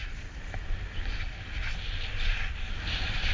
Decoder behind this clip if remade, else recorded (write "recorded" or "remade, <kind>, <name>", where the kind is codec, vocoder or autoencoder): recorded